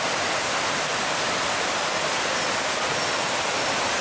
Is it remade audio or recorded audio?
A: recorded